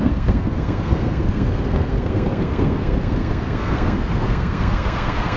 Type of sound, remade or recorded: remade